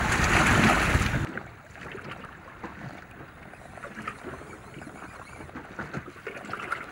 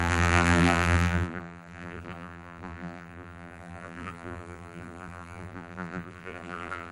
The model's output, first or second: second